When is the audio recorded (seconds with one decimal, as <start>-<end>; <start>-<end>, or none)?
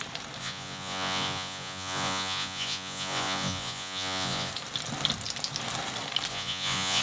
0.0-0.4; 4.5-6.3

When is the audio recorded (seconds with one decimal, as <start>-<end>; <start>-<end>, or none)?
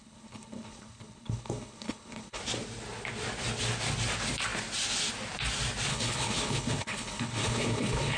2.4-5.9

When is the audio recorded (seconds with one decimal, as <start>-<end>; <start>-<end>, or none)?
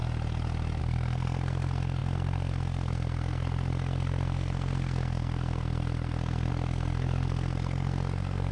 0.0-0.8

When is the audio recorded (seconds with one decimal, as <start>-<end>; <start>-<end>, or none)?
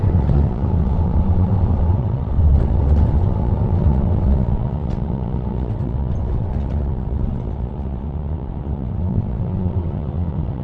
none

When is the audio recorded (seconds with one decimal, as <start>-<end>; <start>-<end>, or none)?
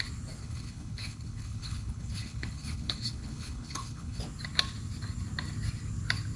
0.0-0.4; 4.2-6.4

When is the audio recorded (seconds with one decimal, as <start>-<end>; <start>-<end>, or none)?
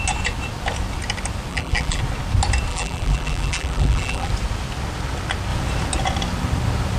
0.0-1.5; 2.0-2.7; 4.3-7.0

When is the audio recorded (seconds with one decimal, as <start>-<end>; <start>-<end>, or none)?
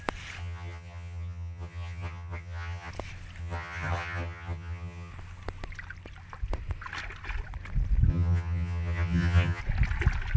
0.0-0.4; 2.9-3.4; 5.1-8.1; 9.6-10.4